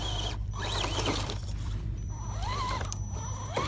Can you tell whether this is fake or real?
fake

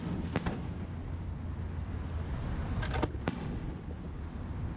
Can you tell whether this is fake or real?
real